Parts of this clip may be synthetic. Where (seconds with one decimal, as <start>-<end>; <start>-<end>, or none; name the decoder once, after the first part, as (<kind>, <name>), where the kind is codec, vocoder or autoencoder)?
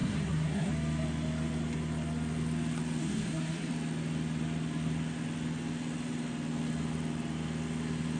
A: 0.0-0.7 (codec, SNAC); 3.0-3.7